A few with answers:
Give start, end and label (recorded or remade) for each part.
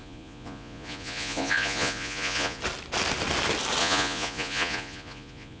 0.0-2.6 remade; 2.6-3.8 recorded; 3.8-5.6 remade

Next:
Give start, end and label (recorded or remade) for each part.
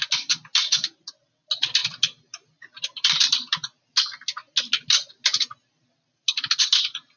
0.0-7.2 recorded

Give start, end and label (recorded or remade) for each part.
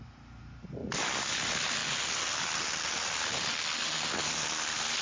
0.0-5.0 recorded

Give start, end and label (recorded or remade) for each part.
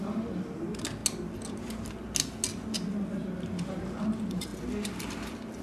0.0-1.0 remade; 1.0-3.7 recorded; 3.7-4.5 remade; 4.5-5.6 recorded